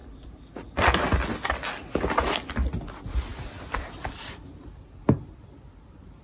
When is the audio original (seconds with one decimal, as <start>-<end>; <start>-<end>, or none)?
0.7-6.2